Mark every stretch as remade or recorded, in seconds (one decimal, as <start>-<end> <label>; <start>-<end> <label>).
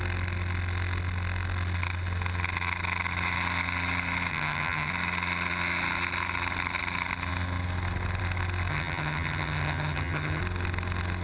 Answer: 0.0-4.3 recorded; 4.3-4.9 remade; 4.9-8.7 recorded; 8.7-10.4 remade; 10.4-11.2 recorded